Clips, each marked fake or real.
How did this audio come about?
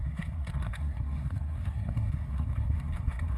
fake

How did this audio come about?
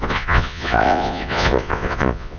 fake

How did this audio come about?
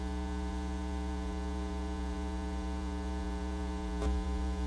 fake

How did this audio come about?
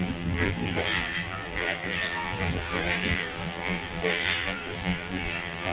fake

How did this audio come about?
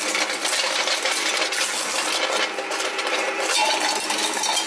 real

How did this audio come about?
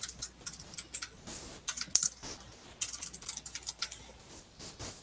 real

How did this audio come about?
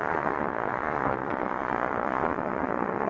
fake